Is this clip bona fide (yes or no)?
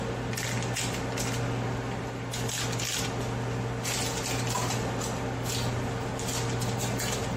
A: yes